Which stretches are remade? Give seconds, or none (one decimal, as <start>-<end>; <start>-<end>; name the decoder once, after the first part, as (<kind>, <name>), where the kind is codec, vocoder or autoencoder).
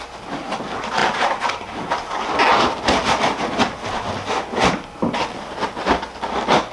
1.0-1.8 (vocoder, BigVGAN v2)